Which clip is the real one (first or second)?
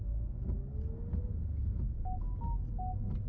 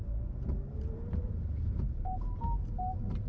first